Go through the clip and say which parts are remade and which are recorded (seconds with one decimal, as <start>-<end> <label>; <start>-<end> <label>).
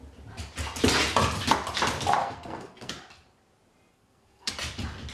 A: 0.0-2.2 recorded; 2.2-2.9 remade; 2.9-3.9 recorded; 3.9-4.5 remade; 4.5-5.1 recorded